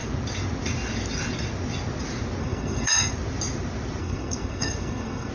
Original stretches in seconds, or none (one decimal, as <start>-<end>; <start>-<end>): 0.0-2.4; 3.1-4.0